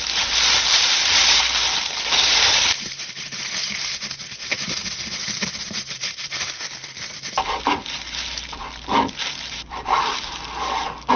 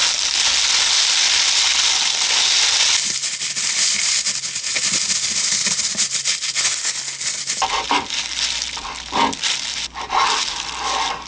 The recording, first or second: second